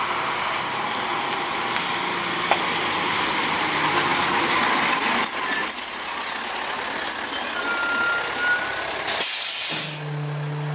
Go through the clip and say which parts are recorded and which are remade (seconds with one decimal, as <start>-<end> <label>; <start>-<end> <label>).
0.0-4.1 recorded; 4.1-4.9 remade; 4.9-10.7 recorded